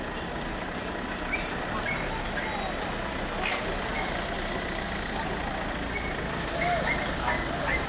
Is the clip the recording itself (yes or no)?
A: yes